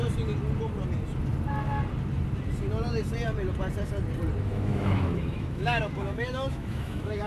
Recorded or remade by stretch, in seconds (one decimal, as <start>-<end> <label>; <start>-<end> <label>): 0.0-4.4 recorded; 4.4-7.3 remade